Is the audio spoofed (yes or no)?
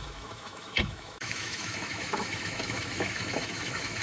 yes